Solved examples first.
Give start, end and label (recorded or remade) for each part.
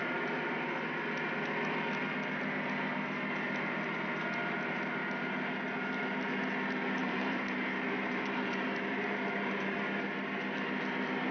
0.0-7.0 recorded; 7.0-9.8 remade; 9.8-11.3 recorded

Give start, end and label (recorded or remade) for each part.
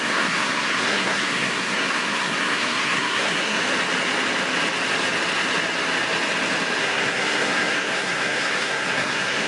0.0-3.6 remade; 3.6-6.8 recorded; 6.8-9.5 remade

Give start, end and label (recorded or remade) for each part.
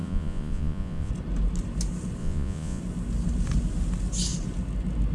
0.0-1.1 remade; 1.1-2.2 recorded; 2.2-2.8 remade; 2.8-5.1 recorded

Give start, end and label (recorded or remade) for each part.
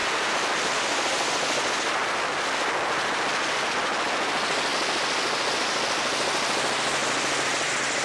0.0-8.0 recorded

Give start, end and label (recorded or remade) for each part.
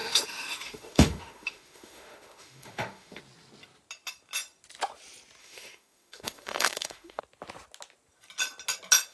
0.0-3.2 remade; 3.2-5.4 recorded; 5.4-7.2 remade; 7.2-9.1 recorded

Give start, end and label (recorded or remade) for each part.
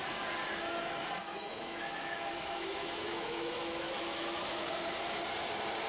0.0-1.2 recorded; 1.2-4.7 remade; 4.7-5.9 recorded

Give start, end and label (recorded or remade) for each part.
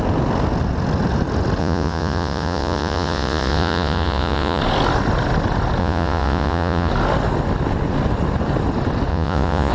0.0-1.6 recorded; 1.6-4.6 remade; 4.6-5.8 recorded; 5.8-6.9 remade; 6.9-9.1 recorded; 9.1-9.7 remade